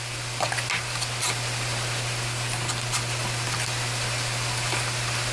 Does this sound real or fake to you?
real